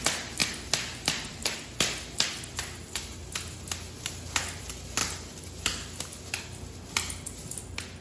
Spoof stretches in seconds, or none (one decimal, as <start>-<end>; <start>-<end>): none